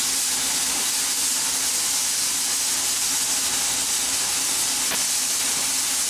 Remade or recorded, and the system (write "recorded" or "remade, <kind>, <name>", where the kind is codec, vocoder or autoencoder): recorded